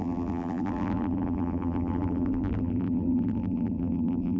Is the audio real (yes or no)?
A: no